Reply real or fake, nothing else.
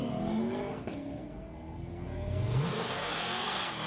fake